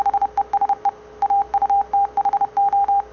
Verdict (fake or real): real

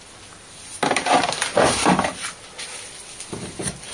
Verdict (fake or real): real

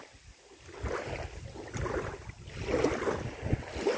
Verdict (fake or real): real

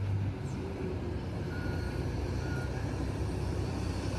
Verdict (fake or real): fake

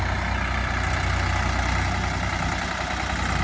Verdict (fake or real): real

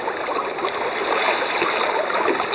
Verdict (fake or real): real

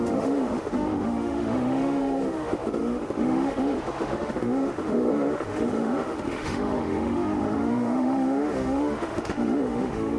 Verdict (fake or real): fake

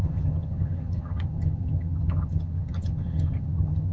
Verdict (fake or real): fake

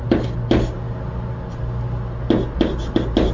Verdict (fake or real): real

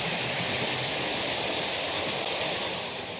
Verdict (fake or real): real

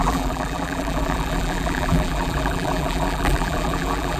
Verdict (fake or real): fake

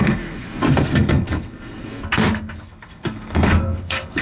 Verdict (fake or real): fake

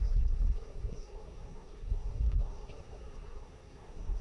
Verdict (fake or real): fake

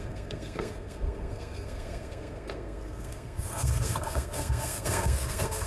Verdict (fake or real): fake